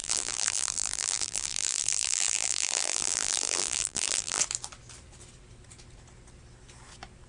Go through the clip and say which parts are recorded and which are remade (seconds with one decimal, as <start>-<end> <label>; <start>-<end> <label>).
0.0-4.4 remade; 4.4-7.3 recorded